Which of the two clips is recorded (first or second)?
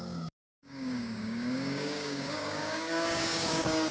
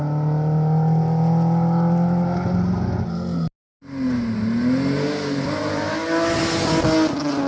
second